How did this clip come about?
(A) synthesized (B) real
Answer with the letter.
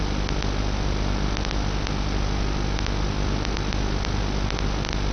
B